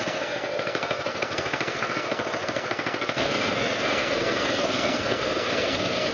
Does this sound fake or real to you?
fake